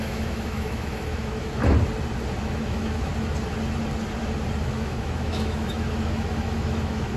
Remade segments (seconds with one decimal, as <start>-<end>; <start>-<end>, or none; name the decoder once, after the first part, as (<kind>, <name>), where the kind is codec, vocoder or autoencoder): 0.0-1.6 (autoencoder, DAC-VAE); 2.4-3.1; 4.6-7.2

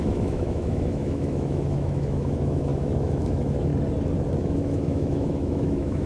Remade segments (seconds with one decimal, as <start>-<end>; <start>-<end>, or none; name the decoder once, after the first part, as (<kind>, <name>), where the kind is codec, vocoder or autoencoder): 0.0-3.7 (autoencoder, DAC-VAE); 4.4-6.1